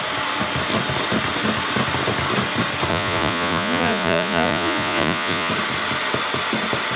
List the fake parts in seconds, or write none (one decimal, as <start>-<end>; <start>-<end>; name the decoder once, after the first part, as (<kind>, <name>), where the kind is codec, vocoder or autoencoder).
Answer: 2.9-5.5 (vocoder, Vocos)